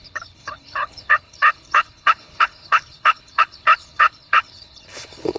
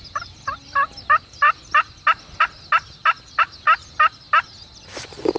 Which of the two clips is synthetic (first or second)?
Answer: first